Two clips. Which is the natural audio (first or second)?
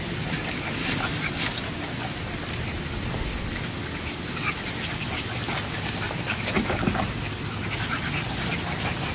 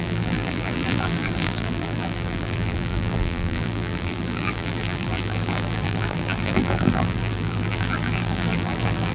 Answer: first